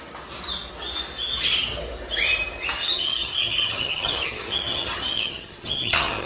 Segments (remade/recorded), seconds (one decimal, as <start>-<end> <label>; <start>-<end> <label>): 0.0-2.8 recorded; 2.8-6.3 remade